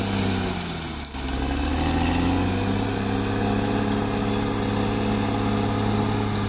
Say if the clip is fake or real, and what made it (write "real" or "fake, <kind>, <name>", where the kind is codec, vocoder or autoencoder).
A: real